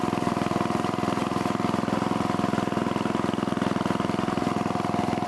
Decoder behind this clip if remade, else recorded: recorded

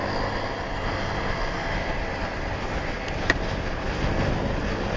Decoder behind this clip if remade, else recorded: recorded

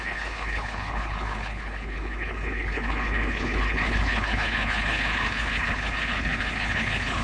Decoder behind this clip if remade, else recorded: remade, codec, HILCodec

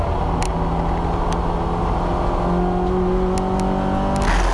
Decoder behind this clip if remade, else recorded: recorded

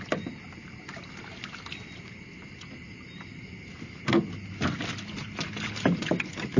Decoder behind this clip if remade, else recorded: recorded